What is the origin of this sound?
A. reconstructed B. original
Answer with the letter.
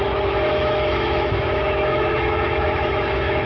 A